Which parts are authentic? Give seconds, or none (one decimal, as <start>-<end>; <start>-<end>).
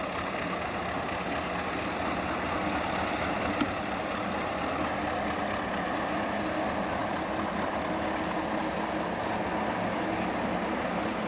0.0-7.0; 7.5-11.3